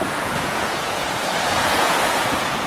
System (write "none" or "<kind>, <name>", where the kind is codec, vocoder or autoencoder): vocoder, Vocos